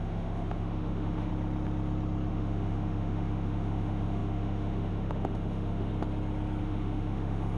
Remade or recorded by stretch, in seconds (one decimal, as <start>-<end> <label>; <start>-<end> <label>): 0.0-1.3 remade; 1.3-2.3 recorded; 2.3-5.9 remade; 5.9-6.6 recorded; 6.6-7.6 remade